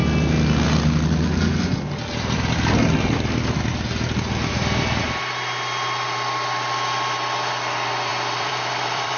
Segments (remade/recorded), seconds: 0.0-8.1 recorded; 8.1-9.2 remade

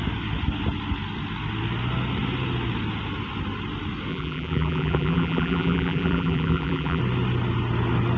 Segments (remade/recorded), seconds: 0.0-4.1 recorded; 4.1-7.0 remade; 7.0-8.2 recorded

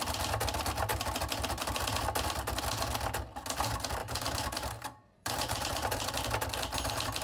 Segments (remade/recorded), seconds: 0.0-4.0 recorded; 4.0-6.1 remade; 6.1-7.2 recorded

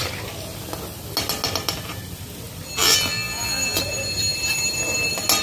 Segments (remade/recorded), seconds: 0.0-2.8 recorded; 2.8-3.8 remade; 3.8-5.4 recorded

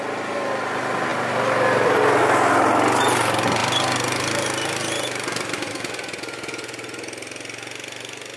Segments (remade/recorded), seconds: 0.0-8.4 recorded